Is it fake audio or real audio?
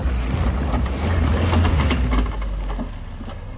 real